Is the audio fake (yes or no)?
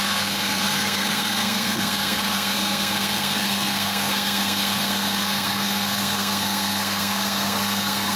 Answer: yes